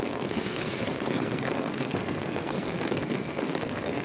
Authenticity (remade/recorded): remade